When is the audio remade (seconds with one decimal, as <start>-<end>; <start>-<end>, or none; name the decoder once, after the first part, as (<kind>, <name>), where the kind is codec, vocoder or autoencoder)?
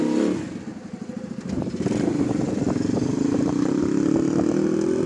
0.7-3.8 (vocoder, BigVGAN v2)